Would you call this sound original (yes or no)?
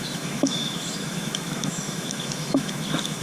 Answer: no